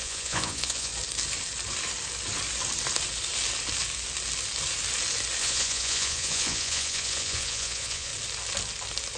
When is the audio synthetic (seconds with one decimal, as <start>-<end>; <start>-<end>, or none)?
0.0-0.9; 5.4-8.1